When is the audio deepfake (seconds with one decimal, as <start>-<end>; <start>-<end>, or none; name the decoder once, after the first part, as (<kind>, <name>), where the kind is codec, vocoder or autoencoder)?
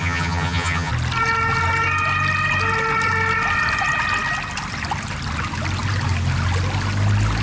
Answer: 0.0-0.9 (vocoder, HiFi-GAN)